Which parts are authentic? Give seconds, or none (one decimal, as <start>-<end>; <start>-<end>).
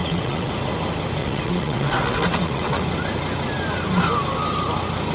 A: 0.5-1.2; 2.8-5.1